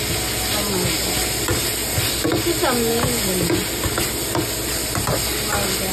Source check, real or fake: real